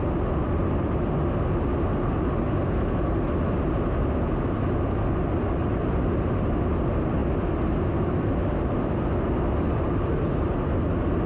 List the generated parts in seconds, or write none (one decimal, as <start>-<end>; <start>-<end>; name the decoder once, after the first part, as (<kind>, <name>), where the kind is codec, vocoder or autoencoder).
none